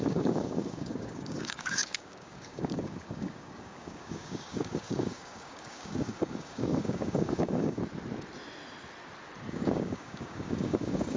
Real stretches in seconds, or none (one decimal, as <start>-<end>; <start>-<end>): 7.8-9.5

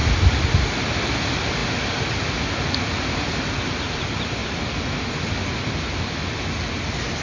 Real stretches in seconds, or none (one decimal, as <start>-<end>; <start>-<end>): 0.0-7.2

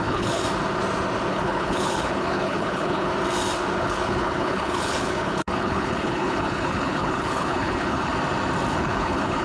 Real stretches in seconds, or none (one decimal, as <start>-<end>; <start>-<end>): 0.4-1.3; 3.1-3.8; 8.1-8.7